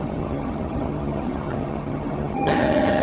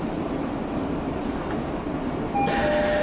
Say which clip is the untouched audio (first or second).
second